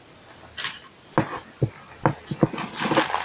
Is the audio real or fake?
real